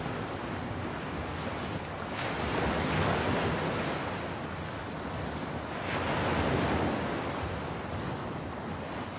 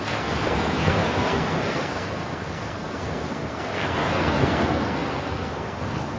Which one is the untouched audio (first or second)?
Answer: first